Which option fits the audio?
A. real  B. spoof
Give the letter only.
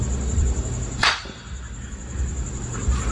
B